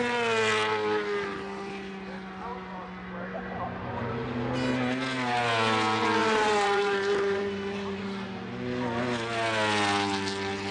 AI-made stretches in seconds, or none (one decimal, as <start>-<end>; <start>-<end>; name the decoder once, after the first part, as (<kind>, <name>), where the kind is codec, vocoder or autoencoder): 6.2-7.4 (vocoder, BigVGAN v2)

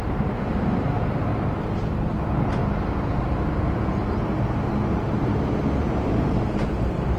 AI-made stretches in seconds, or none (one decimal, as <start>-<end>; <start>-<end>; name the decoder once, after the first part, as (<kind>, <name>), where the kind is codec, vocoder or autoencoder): 0.0-1.3 (vocoder, BigVGAN v2); 2.1-2.6; 3.7-5.3; 5.9-7.2

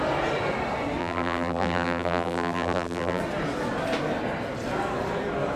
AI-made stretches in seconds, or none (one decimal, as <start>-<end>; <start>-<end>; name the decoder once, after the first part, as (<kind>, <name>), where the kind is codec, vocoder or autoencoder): 1.0-3.2 (vocoder, BigVGAN v2)

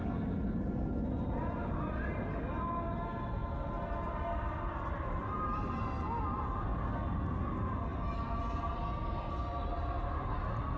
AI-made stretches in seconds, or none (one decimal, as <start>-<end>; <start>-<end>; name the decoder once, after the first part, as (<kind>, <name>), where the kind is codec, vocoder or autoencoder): none